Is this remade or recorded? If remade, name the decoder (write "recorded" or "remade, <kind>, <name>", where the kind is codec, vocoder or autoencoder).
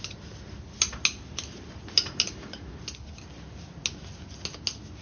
recorded